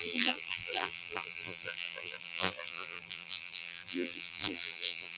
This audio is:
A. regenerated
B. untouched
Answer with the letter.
A